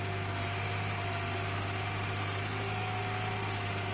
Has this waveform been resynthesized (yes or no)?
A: no